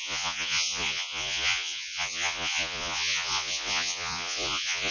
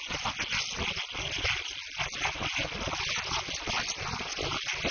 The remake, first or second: first